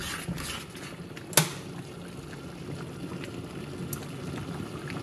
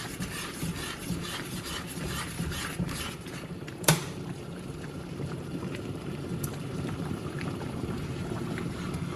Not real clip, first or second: second